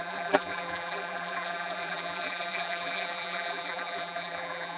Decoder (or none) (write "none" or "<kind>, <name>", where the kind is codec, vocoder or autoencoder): vocoder, BigVGAN v2